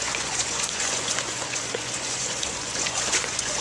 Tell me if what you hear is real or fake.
fake